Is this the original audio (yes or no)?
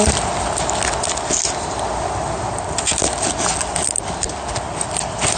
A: yes